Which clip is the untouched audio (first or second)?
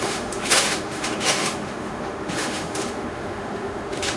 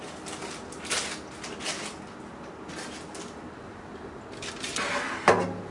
second